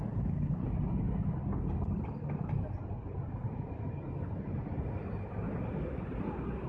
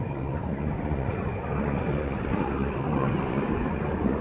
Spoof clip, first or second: second